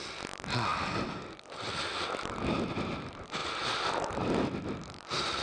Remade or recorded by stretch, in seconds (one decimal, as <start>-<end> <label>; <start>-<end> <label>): 0.0-5.4 recorded